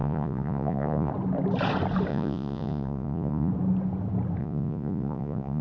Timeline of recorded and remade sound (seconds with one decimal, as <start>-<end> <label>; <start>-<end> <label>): 0.0-1.1 remade; 1.1-2.1 recorded; 2.1-3.5 remade; 3.5-4.4 recorded; 4.4-5.6 remade